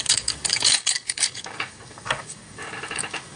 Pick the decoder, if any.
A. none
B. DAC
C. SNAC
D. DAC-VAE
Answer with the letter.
B